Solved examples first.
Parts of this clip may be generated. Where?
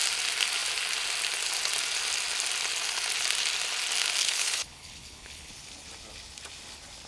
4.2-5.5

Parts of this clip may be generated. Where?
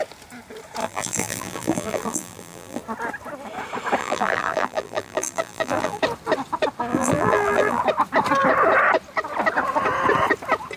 0.8-2.8; 4.0-6.0; 6.9-7.8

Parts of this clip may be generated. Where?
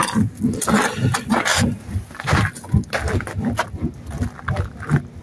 none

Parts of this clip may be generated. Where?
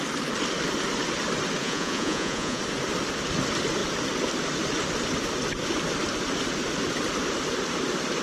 1.6-2.6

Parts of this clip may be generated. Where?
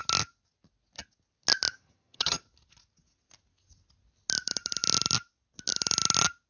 1.7-2.4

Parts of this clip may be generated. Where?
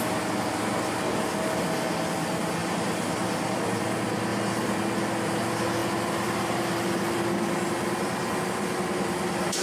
2.6-3.8; 4.3-4.8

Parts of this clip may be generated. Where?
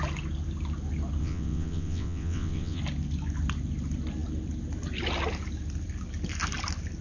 1.2-2.8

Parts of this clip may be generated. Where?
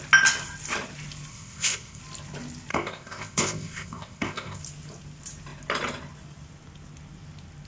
1.3-2.0; 2.7-4.6